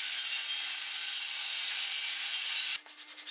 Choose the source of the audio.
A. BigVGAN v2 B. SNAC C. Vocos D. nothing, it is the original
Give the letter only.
D